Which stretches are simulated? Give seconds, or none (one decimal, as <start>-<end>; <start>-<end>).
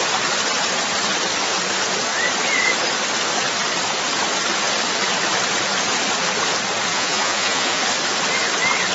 6.9-7.8